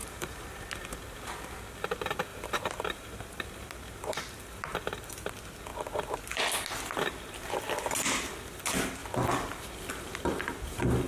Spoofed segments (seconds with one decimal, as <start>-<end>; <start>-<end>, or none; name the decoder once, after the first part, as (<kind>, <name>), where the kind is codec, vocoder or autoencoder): 0.0-0.6 (vocoder, BigVGAN v2); 2.3-5.3